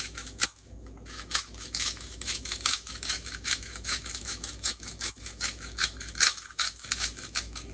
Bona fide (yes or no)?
no